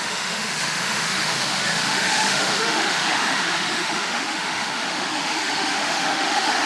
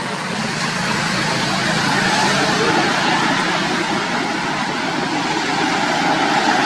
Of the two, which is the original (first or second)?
second